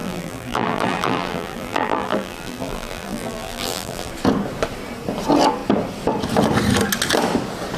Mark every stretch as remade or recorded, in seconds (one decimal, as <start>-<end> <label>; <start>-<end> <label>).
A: 0.0-4.1 remade; 4.1-7.8 recorded